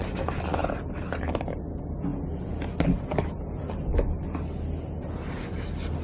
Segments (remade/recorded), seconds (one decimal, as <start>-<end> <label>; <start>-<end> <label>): 0.0-6.0 recorded